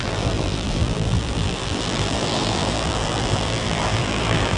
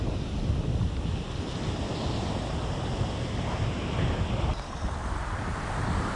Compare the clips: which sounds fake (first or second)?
first